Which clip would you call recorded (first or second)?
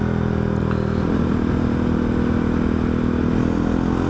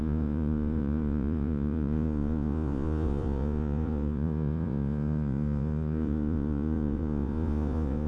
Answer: first